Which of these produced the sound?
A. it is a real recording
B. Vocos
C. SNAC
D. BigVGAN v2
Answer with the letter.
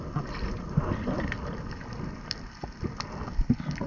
A